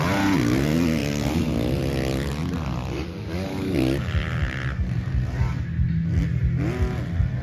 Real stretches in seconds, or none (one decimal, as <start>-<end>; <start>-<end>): 0.0-7.4